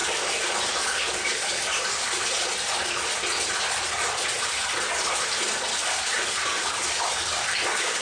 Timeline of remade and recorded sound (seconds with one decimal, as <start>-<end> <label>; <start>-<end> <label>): 0.0-2.2 remade; 2.2-5.7 recorded; 5.7-8.0 remade